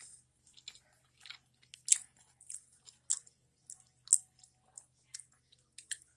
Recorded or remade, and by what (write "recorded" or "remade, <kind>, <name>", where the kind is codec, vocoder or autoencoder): recorded